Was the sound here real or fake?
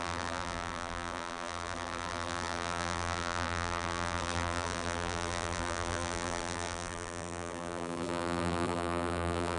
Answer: fake